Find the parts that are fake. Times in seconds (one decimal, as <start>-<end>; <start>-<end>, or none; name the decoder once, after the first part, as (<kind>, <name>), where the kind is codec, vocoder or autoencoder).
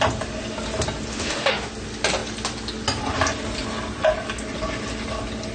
1.1-1.7 (autoencoder, DAC-VAE)